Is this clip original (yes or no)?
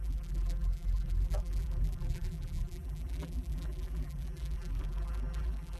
no